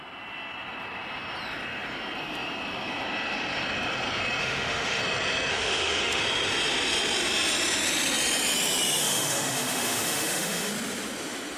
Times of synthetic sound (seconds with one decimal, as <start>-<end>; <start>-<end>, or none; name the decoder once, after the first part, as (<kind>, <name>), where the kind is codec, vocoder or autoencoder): 4.4-5.0 (autoencoder, DAC-VAE); 5.5-6.2; 9.0-10.7